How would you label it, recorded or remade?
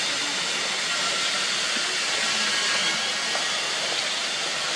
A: recorded